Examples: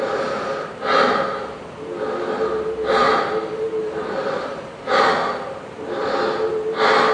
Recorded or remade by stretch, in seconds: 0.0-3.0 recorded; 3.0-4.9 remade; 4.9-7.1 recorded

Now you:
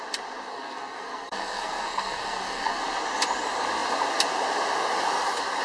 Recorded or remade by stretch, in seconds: 0.0-0.5 recorded; 0.5-2.8 remade; 2.8-5.6 recorded

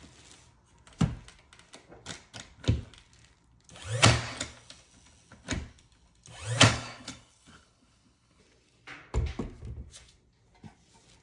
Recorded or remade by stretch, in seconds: 0.0-6.7 recorded; 6.7-8.4 remade; 8.4-11.2 recorded

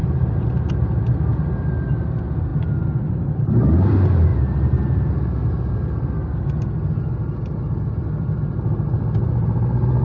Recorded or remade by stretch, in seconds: 0.0-0.7 remade; 0.7-4.3 recorded; 4.3-5.1 remade; 5.1-10.0 recorded

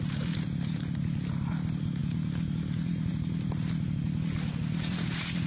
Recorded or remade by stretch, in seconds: 0.0-5.5 recorded